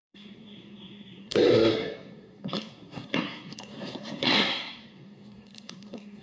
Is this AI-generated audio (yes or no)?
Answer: yes